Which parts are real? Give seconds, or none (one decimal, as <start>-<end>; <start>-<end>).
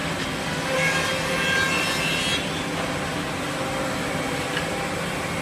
0.0-5.4